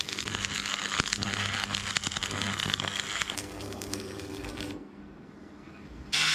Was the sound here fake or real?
fake